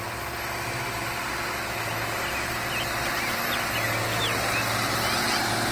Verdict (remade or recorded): recorded